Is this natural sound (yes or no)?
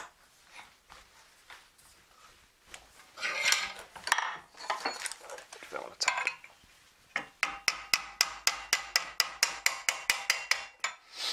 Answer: yes